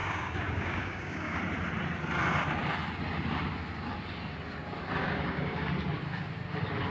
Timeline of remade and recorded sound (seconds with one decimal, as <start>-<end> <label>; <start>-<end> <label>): 0.0-1.4 remade; 1.4-5.0 recorded; 5.0-5.6 remade; 5.6-6.9 recorded